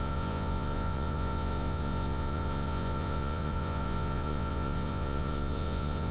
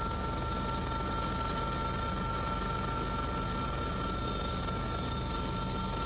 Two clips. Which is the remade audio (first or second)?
first